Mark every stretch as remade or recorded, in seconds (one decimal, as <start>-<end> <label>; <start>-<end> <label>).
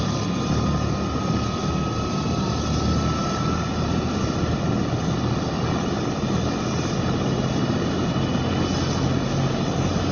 0.0-3.2 recorded; 3.2-6.6 remade; 6.6-10.1 recorded